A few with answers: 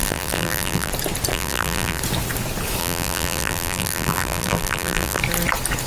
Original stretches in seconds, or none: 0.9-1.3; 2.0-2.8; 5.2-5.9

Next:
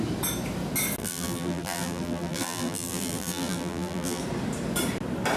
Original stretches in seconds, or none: 0.0-1.0; 4.2-5.4

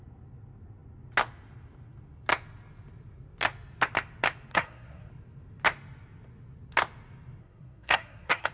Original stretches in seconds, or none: 0.0-4.5; 5.1-7.4

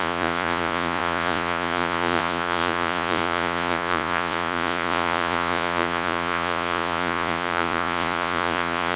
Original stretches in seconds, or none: none

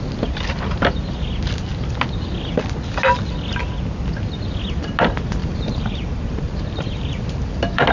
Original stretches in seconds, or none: 0.0-5.4

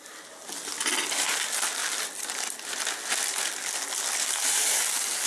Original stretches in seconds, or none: 0.0-4.3; 4.8-5.3

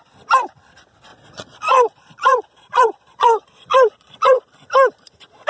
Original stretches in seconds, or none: 0.0-1.1; 4.4-5.5

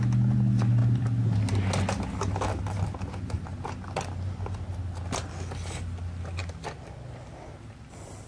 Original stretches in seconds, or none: 0.0-8.3